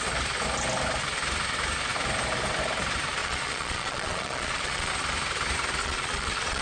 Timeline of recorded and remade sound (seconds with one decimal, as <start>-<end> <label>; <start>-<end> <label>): 0.0-3.2 recorded; 3.2-4.9 remade; 4.9-5.8 recorded; 5.8-6.6 remade